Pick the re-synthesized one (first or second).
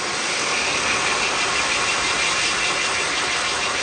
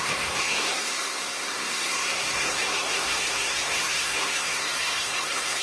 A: second